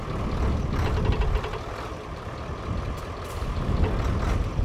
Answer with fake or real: real